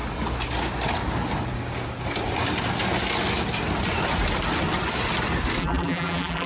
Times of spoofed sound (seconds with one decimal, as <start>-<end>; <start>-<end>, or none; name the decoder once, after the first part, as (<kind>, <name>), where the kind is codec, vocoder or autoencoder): 5.6-6.5 (vocoder, BigVGAN v2)